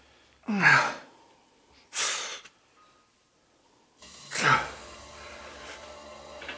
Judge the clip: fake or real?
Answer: real